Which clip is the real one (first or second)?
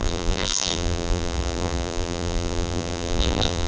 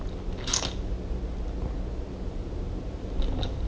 second